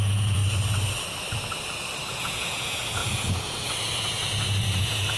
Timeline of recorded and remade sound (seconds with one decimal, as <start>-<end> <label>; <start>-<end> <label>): 0.0-0.4 remade; 0.4-2.1 recorded; 2.1-5.2 remade